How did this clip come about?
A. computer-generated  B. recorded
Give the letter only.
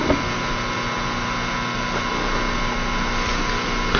B